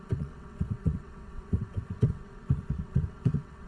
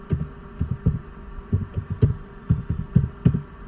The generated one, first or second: first